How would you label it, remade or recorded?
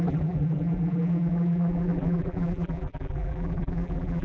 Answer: remade